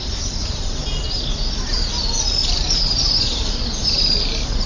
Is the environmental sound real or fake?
real